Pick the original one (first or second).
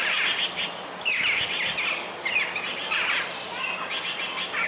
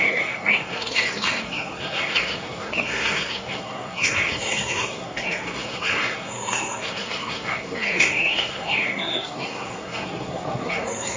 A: first